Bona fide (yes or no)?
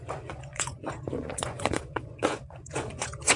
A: no